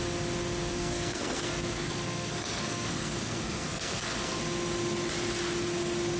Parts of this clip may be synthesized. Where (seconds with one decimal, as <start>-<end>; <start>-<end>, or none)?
0.7-4.4